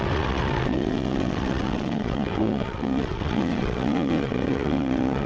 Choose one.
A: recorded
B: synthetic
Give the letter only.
B